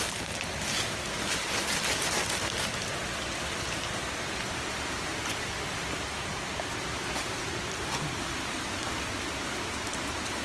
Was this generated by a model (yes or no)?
no